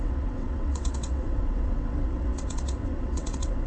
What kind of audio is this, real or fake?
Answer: fake